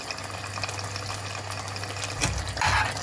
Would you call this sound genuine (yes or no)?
yes